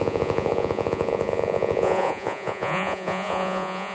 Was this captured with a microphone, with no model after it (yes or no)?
no